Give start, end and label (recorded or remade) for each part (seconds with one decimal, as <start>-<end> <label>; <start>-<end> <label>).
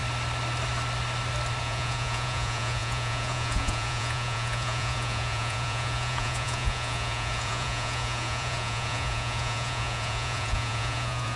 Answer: 0.0-1.6 recorded; 1.6-11.4 remade